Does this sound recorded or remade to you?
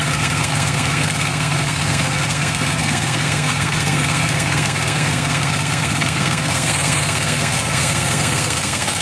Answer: remade